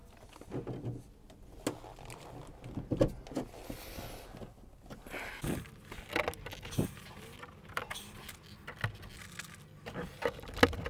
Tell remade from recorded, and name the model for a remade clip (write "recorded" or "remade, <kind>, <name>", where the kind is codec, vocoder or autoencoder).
recorded